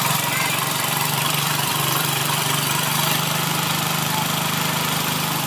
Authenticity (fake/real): fake